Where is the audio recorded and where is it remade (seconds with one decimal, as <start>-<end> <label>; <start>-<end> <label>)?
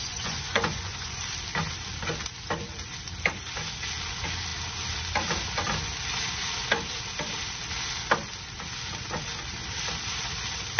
0.0-1.2 remade; 1.2-10.8 recorded